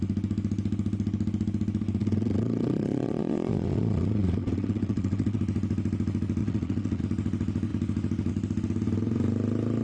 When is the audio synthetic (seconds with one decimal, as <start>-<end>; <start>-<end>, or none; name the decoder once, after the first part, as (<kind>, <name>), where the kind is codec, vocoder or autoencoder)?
2.0-5.4 (vocoder, Vocos); 6.4-7.0